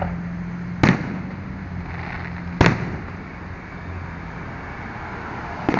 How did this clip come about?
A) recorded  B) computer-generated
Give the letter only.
A